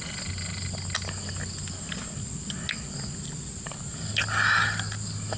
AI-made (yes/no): no